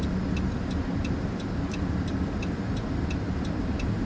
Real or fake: real